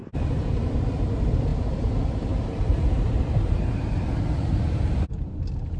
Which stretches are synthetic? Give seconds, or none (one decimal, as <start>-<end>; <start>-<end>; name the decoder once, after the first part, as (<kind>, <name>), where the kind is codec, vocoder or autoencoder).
0.6-5.8 (vocoder, BigVGAN v2)